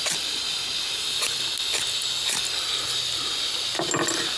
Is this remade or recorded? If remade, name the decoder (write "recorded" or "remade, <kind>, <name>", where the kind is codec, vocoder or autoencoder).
recorded